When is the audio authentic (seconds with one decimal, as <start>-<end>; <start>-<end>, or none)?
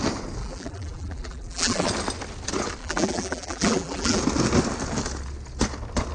0.0-0.4; 1.9-2.8; 4.2-6.1